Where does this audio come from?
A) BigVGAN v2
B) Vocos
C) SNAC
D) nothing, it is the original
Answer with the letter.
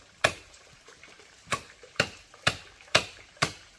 A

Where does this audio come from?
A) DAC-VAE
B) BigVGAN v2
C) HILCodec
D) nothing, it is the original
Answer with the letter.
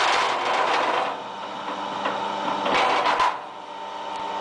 D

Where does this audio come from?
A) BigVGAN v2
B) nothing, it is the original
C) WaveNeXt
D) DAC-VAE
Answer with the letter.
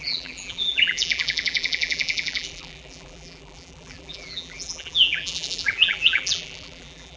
A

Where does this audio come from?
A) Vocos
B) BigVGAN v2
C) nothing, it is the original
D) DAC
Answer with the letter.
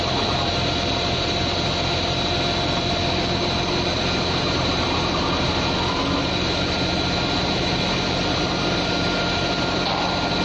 C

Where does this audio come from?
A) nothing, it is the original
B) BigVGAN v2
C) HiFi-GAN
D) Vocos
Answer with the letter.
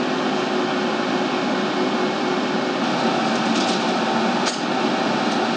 A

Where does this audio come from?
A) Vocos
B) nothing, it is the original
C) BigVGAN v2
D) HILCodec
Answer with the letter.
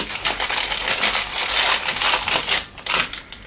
B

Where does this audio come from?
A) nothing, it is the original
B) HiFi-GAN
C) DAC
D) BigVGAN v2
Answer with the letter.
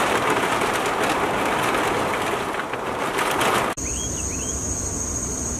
A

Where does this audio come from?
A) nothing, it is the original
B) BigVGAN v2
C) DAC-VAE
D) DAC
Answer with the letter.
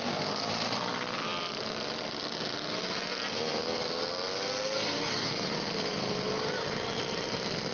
A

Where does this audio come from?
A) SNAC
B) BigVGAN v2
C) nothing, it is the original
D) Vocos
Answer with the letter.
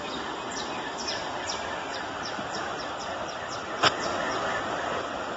C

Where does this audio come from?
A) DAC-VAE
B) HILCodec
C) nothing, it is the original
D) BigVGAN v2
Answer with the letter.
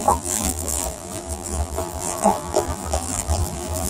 D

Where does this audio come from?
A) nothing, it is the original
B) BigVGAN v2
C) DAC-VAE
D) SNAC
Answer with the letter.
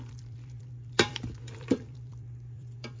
B